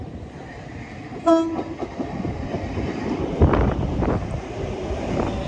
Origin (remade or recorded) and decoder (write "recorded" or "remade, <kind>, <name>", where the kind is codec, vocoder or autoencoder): recorded